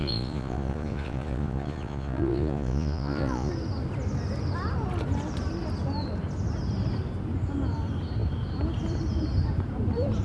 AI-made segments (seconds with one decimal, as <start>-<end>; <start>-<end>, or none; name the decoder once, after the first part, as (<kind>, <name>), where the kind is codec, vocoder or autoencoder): 0.0-3.5 (vocoder, Vocos)